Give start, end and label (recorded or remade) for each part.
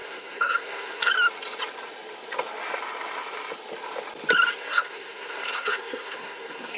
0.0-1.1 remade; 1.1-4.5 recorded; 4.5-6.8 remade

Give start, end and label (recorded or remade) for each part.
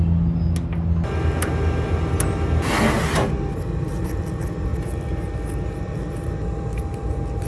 0.0-7.5 recorded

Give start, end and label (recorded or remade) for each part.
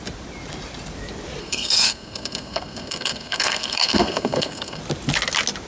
0.0-1.4 recorded; 1.4-4.8 remade; 4.8-5.7 recorded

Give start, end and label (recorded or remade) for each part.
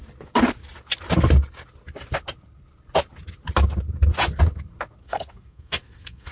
0.0-5.0 recorded; 5.0-6.3 remade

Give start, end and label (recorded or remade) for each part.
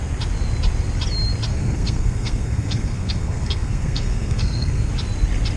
0.0-1.5 recorded; 1.5-4.9 remade; 4.9-5.6 recorded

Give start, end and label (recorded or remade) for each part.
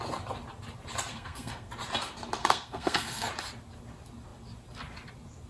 0.0-1.1 recorded; 1.1-1.7 remade; 1.7-2.4 recorded; 2.4-3.3 remade; 3.3-5.5 recorded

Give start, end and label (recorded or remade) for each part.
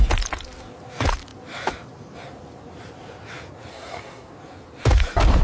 0.0-3.7 recorded; 3.7-4.3 remade; 4.3-5.4 recorded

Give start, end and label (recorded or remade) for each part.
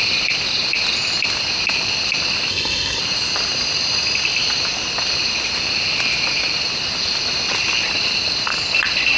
0.0-2.5 recorded; 2.5-3.0 remade; 3.0-9.2 recorded